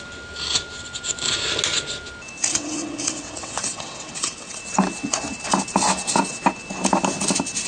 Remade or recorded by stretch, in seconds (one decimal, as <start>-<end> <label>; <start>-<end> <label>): 0.0-2.5 recorded; 2.5-4.6 remade; 4.6-7.7 recorded